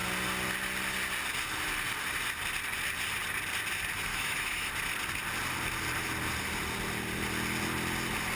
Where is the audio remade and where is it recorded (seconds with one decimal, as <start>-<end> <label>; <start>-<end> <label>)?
0.0-4.1 recorded; 4.1-4.7 remade; 4.7-8.4 recorded